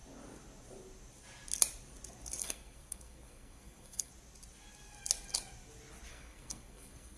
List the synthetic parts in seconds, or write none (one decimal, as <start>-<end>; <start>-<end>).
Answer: 2.4-4.1; 6.1-7.2